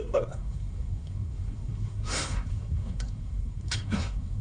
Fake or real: fake